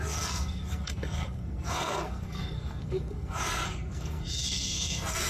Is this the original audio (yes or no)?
no